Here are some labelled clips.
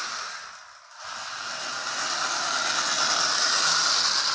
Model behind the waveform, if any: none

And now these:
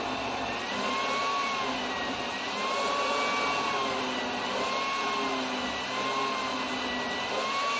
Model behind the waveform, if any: none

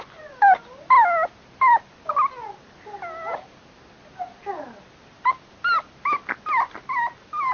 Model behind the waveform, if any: none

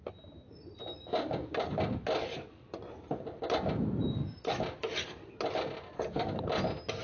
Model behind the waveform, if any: none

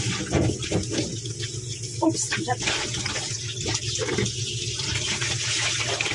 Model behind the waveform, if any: none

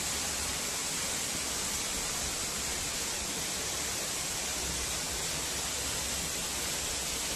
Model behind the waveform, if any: none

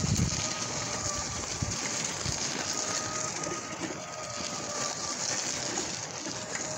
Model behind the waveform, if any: none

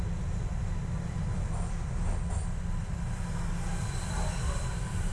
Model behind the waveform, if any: none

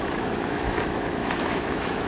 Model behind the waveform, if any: autoencoder, DAC-VAE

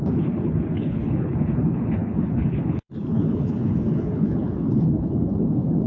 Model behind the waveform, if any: codec, HILCodec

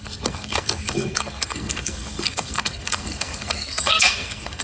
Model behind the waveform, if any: codec, SNAC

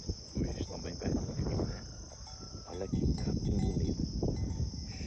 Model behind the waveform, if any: none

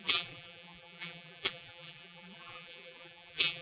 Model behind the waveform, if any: vocoder, BigVGAN v2